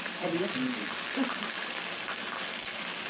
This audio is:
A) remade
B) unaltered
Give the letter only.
B